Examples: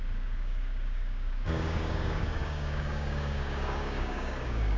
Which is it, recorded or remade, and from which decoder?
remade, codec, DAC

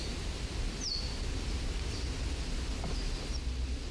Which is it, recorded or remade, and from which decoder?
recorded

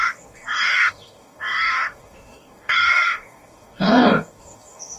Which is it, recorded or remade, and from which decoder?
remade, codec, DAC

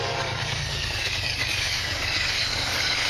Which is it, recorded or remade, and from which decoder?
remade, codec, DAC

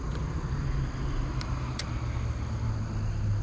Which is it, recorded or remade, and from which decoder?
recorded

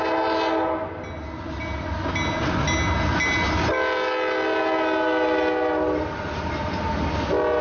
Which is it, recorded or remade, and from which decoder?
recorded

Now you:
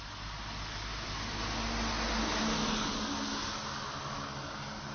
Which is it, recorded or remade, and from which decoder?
recorded